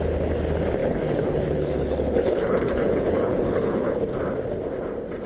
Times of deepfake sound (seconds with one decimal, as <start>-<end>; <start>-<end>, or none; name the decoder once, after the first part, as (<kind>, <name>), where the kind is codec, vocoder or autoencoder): 0.8-4.0 (codec, HILCodec)